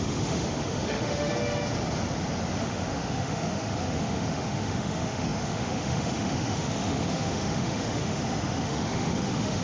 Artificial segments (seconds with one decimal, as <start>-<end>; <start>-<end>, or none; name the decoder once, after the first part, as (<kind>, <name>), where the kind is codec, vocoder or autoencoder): 0.0-1.3 (autoencoder, DAC-VAE); 2.6-9.6